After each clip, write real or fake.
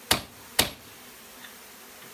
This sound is real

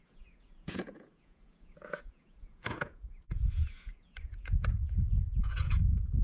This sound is fake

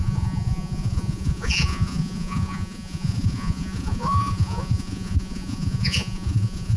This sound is fake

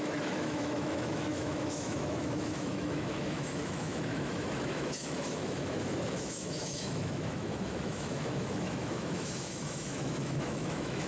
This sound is fake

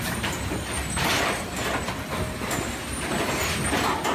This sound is real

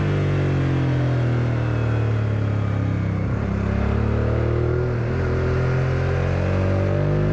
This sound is real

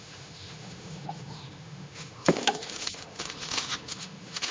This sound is fake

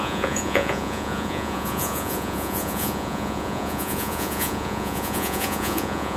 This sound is fake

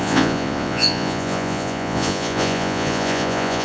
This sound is fake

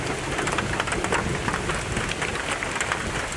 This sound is real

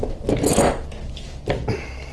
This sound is real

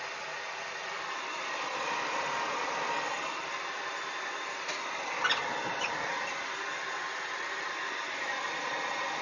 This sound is real